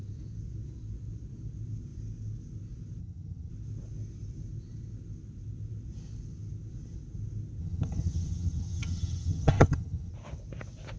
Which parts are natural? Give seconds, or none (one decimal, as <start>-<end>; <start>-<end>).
0.0-3.0; 3.5-7.6; 10.1-11.0